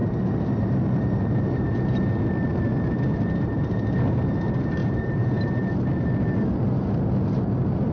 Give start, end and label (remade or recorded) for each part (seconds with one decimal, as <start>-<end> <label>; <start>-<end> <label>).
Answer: 0.0-4.8 recorded; 4.8-5.7 remade; 5.7-7.9 recorded